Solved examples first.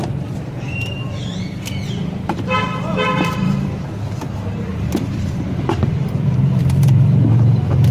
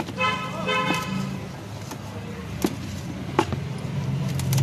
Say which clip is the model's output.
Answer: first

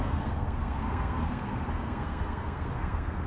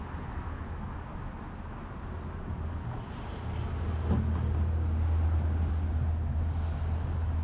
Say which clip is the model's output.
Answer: first